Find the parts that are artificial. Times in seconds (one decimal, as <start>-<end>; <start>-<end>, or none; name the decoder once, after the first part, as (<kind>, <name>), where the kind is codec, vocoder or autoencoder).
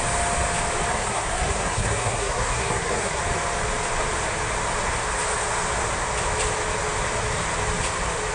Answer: 0.9-3.2 (codec, SNAC)